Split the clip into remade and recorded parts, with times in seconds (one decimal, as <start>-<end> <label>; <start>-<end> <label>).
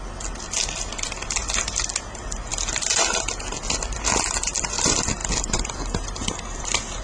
0.0-1.4 recorded; 1.4-1.9 remade; 1.9-5.2 recorded; 5.2-7.0 remade